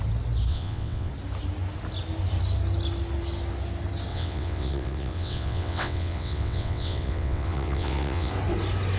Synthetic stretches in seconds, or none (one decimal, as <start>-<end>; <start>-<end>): 0.5-1.1; 4.1-8.3